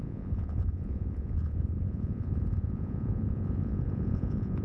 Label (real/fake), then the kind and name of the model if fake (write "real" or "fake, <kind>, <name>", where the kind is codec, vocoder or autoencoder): fake, vocoder, Vocos